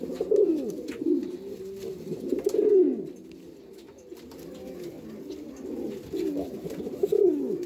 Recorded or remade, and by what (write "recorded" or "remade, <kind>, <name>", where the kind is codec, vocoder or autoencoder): recorded